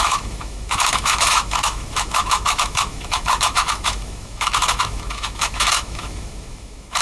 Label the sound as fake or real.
fake